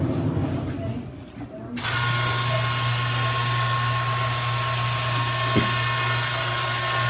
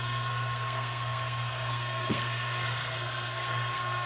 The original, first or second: first